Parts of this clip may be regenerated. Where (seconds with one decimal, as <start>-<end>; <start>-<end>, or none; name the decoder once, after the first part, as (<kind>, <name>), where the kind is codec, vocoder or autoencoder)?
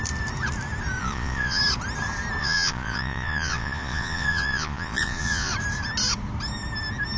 1.0-1.6 (vocoder, Vocos); 2.4-5.5